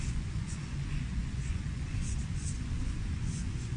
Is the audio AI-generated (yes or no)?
yes